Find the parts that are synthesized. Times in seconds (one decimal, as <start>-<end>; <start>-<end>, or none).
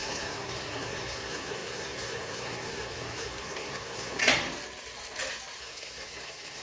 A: 0.0-4.2; 5.6-6.6